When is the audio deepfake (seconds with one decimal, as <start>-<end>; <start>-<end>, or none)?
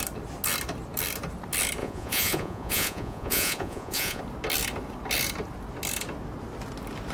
1.8-4.2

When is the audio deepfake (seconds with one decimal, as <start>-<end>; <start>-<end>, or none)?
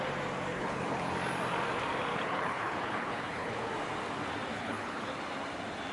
0.5-1.1; 2.1-3.7; 4.5-5.1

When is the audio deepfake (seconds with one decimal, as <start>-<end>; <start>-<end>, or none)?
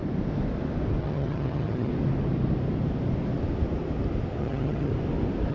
1.0-1.9; 4.4-4.9